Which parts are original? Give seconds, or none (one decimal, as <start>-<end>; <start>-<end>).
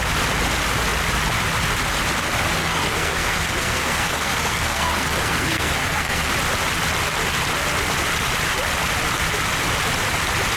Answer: 0.0-2.6; 6.3-10.6